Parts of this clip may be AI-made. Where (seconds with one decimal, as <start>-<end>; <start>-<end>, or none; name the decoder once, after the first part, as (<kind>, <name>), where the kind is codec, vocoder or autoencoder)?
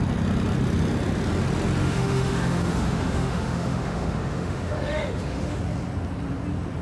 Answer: 1.8-5.6 (autoencoder, DAC-VAE)